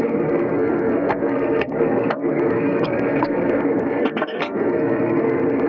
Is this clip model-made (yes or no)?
yes